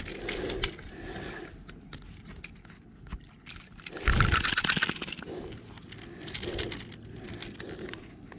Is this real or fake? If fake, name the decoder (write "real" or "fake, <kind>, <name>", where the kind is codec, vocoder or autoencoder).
real